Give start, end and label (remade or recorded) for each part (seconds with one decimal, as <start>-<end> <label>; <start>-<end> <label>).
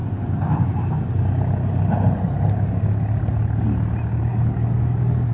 0.0-4.3 recorded; 4.3-5.3 remade